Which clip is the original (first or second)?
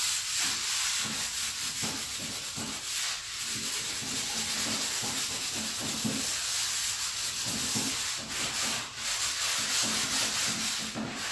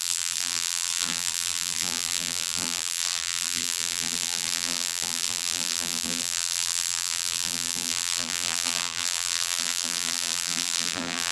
first